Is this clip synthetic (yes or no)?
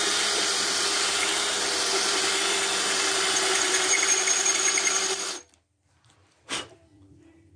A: yes